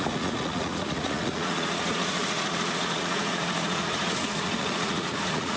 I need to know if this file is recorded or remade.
remade